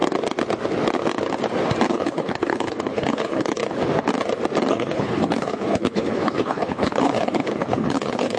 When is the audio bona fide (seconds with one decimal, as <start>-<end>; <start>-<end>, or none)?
0.0-1.9; 3.6-4.7